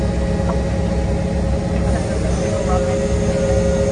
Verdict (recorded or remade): recorded